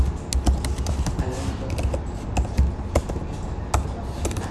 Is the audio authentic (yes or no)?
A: yes